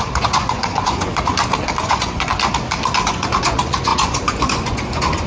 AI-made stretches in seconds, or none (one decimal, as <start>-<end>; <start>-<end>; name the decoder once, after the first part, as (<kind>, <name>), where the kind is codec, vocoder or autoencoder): 0.0-1.3 (vocoder, Vocos); 1.8-2.3; 3.0-5.3